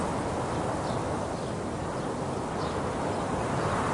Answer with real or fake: real